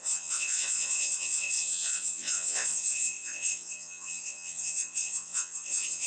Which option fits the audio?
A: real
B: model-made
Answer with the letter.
B